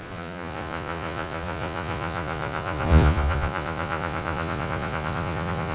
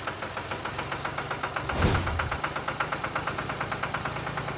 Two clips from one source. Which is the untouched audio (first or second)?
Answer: second